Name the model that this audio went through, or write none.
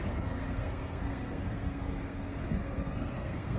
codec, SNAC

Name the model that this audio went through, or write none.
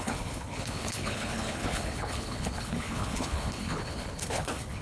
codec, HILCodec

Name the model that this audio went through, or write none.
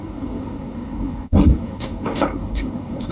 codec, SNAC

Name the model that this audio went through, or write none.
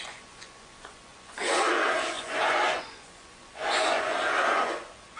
vocoder, Vocos